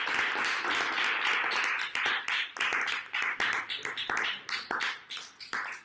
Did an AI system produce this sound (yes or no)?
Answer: no